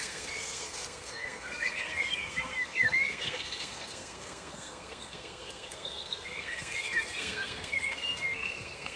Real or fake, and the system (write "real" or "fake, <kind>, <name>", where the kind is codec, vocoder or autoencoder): fake, codec, SNAC